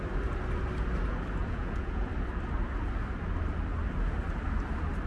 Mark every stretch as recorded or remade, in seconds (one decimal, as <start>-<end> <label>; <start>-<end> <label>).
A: 0.0-1.4 recorded; 1.4-2.1 remade; 2.1-5.1 recorded